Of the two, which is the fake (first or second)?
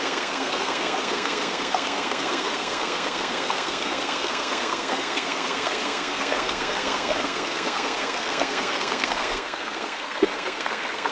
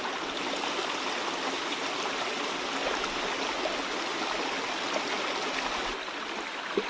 first